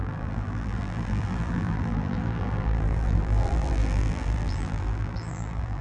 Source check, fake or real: fake